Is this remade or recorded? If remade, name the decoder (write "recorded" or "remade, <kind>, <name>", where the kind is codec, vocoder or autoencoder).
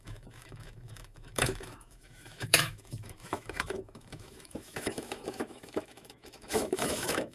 remade, autoencoder, DAC-VAE